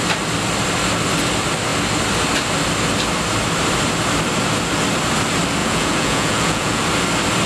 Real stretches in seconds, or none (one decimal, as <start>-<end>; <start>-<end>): 0.0-5.6; 6.8-7.5